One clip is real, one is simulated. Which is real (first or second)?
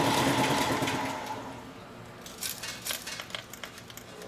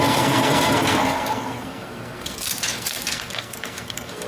first